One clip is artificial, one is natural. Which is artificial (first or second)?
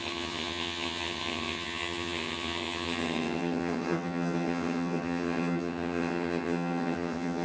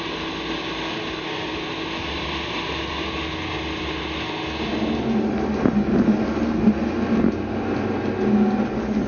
first